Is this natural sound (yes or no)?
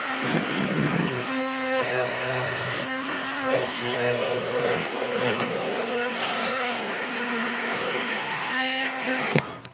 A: no